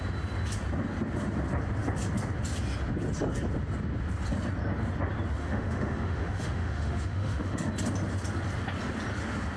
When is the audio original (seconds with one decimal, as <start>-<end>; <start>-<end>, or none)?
0.0-5.4; 7.7-9.6